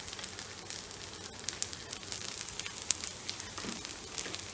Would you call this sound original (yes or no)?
yes